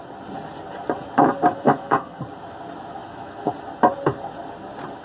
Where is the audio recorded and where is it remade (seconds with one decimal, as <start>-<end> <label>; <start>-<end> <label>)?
0.0-1.5 recorded; 1.5-2.2 remade; 2.2-3.0 recorded; 3.0-3.5 remade; 3.5-5.0 recorded